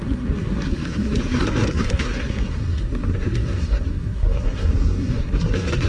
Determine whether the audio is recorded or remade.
remade